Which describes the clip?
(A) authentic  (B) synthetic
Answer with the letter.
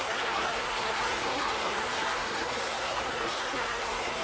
B